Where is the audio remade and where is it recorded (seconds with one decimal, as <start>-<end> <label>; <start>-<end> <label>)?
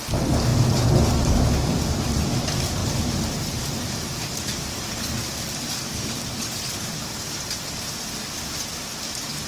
0.0-2.8 recorded; 2.8-7.8 remade; 7.8-9.5 recorded